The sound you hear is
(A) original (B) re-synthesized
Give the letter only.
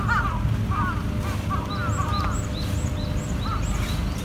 A